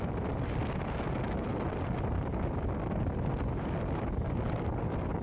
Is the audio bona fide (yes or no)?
yes